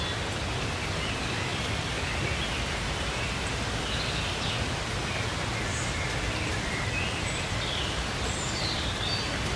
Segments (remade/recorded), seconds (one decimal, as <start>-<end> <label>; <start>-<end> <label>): 0.0-9.6 recorded